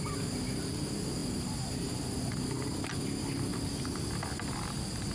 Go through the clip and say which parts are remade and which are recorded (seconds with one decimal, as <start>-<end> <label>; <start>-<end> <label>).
0.0-5.1 recorded